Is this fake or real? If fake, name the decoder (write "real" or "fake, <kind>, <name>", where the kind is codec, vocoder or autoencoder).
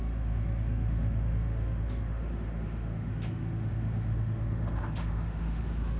fake, autoencoder, DAC-VAE